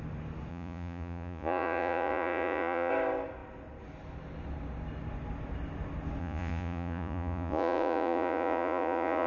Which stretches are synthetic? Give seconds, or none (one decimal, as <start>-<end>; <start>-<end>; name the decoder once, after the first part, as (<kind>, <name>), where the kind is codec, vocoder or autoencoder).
0.5-2.9 (vocoder, Vocos); 6.2-9.3